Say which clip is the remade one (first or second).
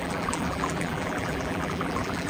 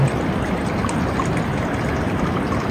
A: first